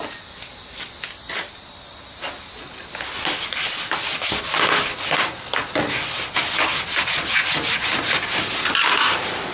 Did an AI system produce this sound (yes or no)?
no